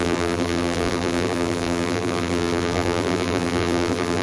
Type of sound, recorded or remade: remade